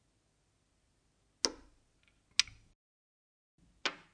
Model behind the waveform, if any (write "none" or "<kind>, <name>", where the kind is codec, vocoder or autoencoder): none